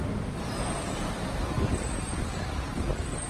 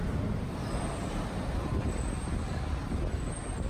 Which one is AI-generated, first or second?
second